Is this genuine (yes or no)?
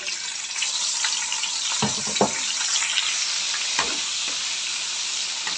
yes